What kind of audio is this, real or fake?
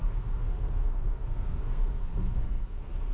fake